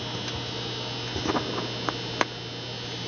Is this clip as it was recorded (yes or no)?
yes